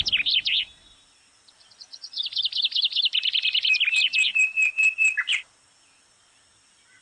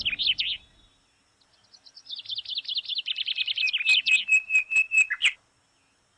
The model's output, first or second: first